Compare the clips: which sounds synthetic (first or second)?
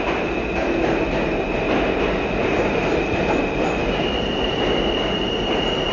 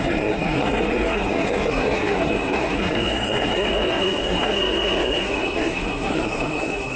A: second